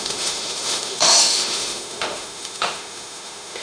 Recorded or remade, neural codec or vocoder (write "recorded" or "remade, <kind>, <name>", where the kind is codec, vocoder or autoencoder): remade, autoencoder, DAC-VAE